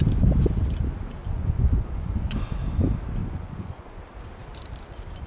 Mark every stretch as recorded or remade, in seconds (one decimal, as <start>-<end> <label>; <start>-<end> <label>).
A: 0.0-1.2 recorded; 1.2-2.4 remade; 2.4-3.2 recorded; 3.2-4.0 remade; 4.0-5.3 recorded